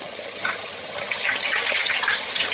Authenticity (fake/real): fake